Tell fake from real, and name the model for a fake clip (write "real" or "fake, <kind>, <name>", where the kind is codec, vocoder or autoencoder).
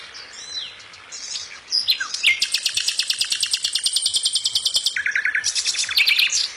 real